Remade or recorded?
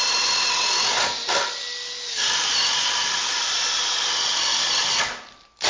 recorded